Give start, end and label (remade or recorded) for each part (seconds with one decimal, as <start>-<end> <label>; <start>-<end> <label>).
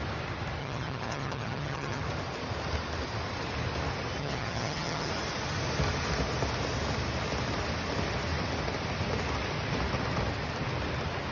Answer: 0.0-0.6 recorded; 0.6-2.0 remade; 2.0-4.2 recorded; 4.2-5.1 remade; 5.1-11.3 recorded